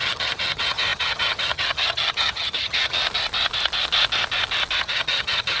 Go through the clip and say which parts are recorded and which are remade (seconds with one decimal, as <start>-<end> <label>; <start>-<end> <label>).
0.0-3.0 remade; 3.0-4.8 recorded; 4.8-5.6 remade